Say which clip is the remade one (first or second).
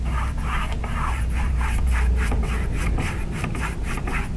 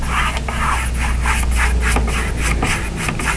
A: first